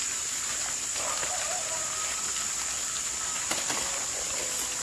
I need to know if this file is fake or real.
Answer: real